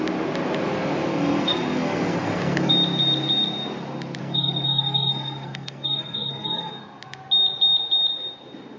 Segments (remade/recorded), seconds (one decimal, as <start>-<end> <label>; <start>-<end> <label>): 0.0-1.1 recorded; 1.1-2.7 remade; 2.7-4.2 recorded; 4.2-6.7 remade; 6.7-8.8 recorded